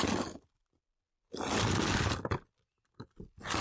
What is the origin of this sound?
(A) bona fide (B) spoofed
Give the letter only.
A